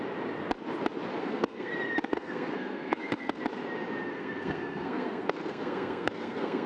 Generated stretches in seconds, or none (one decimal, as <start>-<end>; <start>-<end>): 1.2-1.7; 2.1-3.4; 4.1-6.7